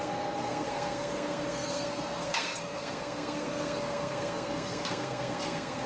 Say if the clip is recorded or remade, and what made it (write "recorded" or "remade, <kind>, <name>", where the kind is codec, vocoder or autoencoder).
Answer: remade, codec, SNAC